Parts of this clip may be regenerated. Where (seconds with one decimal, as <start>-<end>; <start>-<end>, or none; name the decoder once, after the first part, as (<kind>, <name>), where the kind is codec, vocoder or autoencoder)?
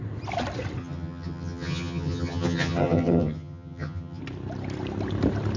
0.8-4.2 (vocoder, HiFi-GAN)